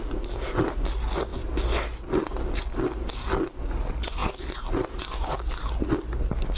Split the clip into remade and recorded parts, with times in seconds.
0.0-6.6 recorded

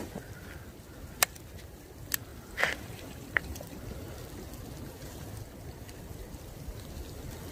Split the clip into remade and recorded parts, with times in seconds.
0.0-2.3 recorded; 2.3-3.8 remade; 3.8-7.5 recorded

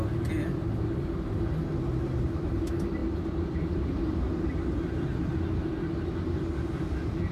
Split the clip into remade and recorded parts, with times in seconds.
0.0-7.3 recorded

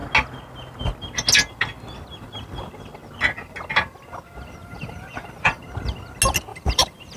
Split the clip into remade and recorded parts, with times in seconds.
0.0-4.6 recorded; 4.6-5.6 remade; 5.6-6.5 recorded; 6.5-7.2 remade

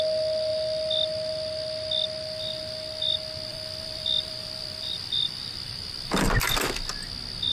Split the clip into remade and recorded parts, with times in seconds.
0.0-3.5 recorded; 3.5-6.2 remade; 6.2-7.5 recorded

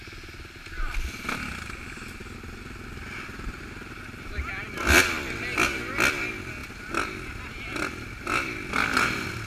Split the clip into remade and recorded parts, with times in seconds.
0.0-9.5 recorded

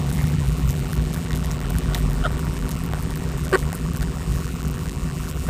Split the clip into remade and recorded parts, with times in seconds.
0.0-5.5 remade